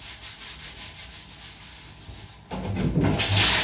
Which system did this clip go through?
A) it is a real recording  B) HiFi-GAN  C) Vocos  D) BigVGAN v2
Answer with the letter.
A